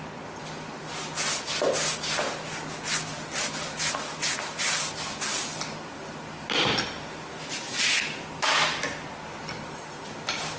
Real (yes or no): yes